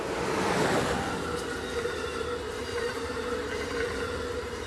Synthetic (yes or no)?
no